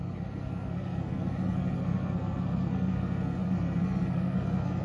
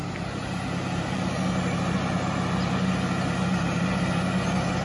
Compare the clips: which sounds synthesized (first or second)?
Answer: first